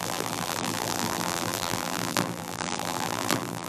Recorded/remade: remade